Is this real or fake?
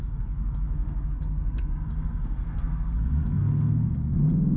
fake